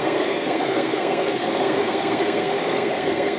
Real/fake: fake